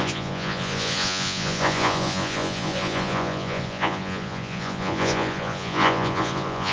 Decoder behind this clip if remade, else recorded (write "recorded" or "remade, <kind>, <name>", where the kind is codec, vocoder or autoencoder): remade, vocoder, Vocos